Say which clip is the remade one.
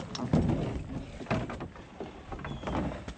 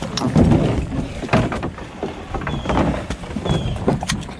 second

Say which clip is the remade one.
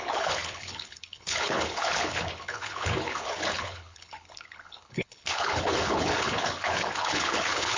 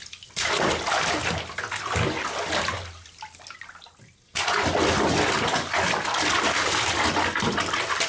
first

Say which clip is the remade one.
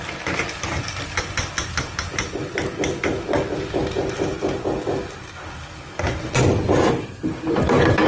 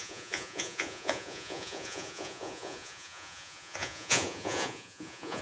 second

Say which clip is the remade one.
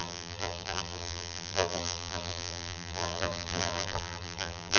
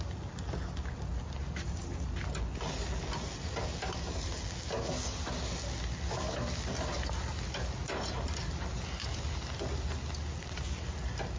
first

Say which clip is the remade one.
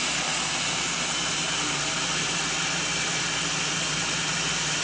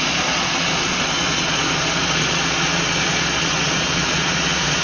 second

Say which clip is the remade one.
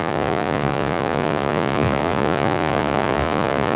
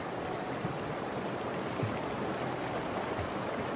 first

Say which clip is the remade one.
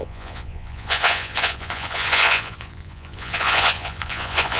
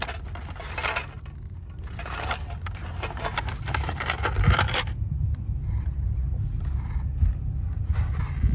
first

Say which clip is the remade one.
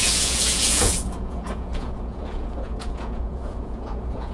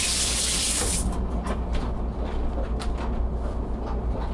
first